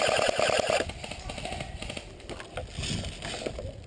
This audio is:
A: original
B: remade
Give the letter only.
A